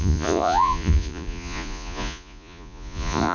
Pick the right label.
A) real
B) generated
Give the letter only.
B